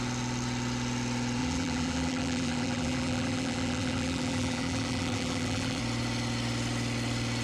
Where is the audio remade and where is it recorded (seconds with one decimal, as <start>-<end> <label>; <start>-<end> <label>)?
0.0-1.4 recorded; 1.4-5.8 remade; 5.8-7.4 recorded